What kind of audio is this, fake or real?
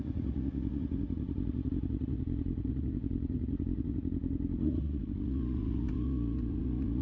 fake